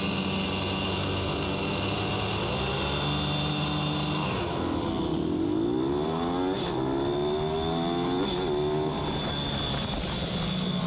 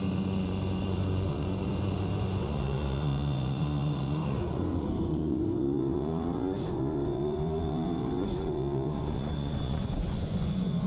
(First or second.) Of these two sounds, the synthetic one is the second